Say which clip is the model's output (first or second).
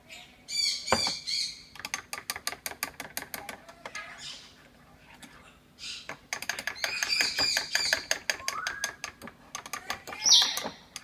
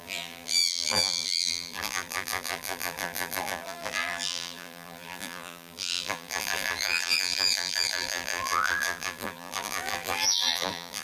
second